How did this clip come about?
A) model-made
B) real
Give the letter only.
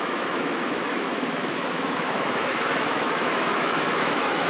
A